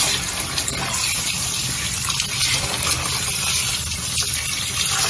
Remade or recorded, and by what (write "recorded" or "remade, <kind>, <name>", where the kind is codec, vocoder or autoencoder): recorded